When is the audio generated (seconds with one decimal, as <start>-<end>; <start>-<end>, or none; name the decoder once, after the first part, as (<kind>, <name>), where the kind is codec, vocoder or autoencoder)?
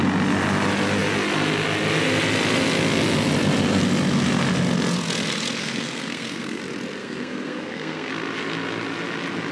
5.6-6.6 (codec, SNAC); 7.0-8.1